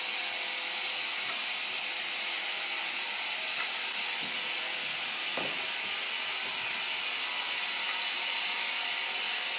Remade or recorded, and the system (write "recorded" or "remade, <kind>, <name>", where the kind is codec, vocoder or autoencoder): recorded